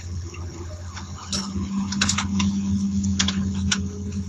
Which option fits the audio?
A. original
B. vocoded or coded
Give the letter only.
B